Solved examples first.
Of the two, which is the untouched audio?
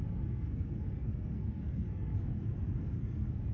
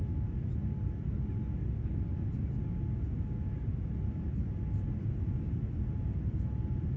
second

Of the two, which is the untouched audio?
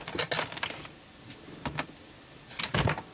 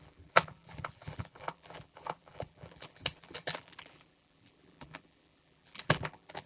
first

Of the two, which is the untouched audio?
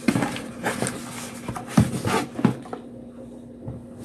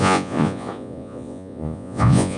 first